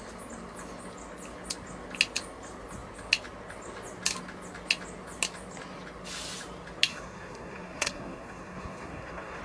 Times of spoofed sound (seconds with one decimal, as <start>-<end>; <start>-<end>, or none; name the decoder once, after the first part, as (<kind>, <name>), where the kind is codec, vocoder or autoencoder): 6.9-9.4 (codec, SNAC)